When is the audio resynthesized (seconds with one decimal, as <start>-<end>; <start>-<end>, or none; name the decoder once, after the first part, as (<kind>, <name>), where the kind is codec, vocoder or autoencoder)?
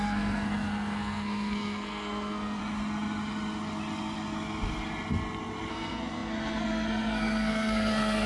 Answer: 0.0-2.6 (codec, SNAC); 5.7-8.3